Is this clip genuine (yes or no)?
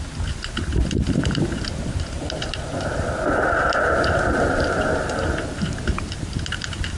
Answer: no